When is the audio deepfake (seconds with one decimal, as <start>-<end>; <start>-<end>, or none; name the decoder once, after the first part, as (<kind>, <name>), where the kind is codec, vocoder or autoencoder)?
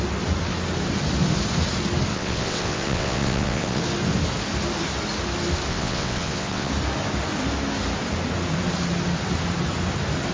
2.1-3.8 (vocoder, WaveNeXt); 5.7-6.7